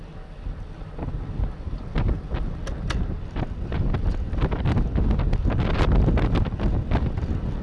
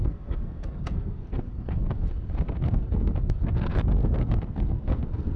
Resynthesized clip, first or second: second